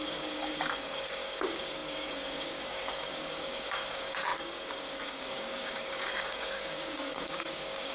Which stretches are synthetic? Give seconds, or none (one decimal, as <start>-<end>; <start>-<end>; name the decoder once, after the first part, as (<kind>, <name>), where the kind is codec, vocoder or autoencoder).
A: 0.0-7.9 (codec, DAC)